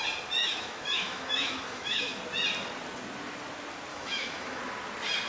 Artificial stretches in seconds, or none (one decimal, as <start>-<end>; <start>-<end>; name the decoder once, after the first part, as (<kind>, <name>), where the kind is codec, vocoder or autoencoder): 0.4-2.2 (autoencoder, DAC-VAE); 3.9-4.6